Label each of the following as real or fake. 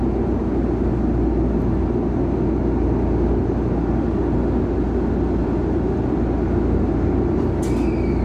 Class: real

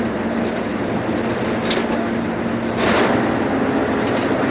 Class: real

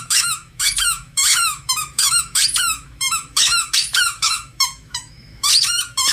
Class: fake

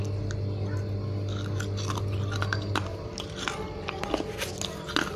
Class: real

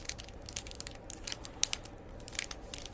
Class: fake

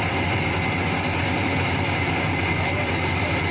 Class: real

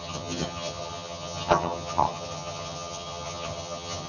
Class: fake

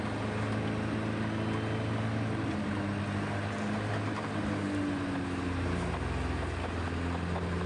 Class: real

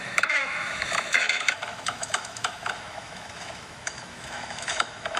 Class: fake